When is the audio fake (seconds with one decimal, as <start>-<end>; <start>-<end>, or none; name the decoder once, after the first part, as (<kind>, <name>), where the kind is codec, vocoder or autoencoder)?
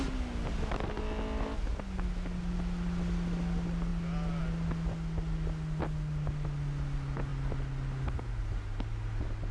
none